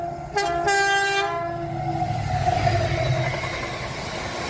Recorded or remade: recorded